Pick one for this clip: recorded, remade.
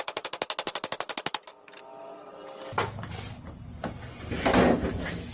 recorded